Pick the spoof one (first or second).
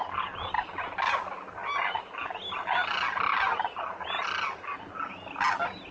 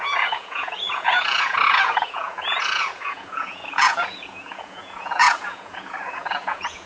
second